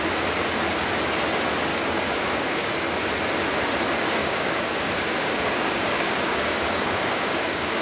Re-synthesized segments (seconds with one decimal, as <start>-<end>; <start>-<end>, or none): 1.7-2.7; 4.2-7.8